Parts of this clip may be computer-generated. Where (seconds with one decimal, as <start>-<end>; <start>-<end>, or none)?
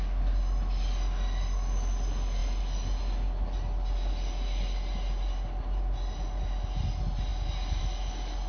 none